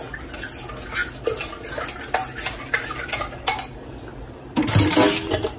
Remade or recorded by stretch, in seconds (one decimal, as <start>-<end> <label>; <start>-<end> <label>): 0.0-5.6 recorded